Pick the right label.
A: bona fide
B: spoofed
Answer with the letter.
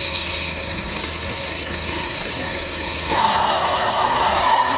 B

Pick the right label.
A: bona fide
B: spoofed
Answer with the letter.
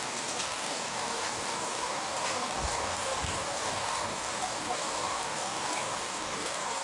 B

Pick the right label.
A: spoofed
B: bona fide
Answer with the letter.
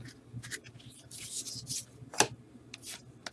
B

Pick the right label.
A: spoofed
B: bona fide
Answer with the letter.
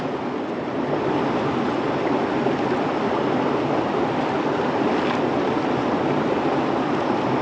B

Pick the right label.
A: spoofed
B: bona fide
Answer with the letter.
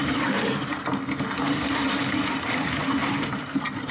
B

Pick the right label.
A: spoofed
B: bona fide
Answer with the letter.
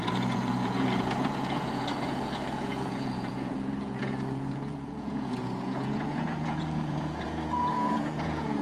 A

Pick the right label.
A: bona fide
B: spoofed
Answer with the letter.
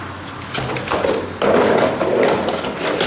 A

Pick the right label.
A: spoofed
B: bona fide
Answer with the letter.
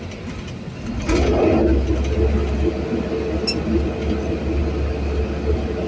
B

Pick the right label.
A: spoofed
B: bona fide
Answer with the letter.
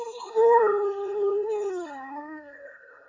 A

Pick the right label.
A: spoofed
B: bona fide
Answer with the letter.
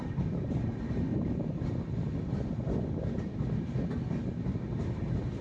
B